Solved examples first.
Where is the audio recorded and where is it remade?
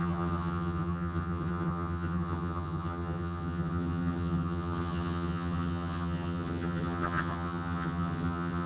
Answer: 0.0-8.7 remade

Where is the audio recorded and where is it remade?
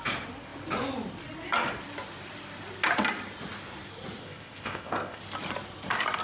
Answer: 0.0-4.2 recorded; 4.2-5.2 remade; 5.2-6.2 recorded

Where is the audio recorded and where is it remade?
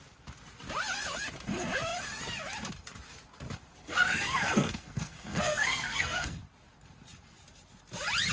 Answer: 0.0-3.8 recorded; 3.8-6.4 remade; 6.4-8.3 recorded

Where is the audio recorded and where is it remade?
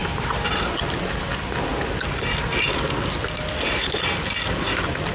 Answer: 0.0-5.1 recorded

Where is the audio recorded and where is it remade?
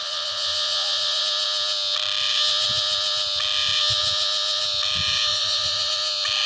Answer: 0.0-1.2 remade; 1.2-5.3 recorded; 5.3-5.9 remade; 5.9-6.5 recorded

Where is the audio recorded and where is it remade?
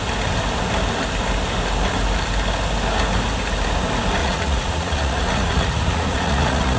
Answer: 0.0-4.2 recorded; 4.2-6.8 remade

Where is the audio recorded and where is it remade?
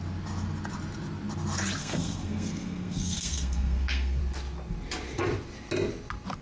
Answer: 0.0-1.8 recorded; 1.8-4.2 remade; 4.2-6.4 recorded